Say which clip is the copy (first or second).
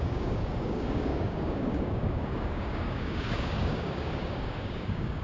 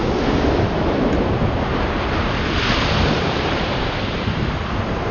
first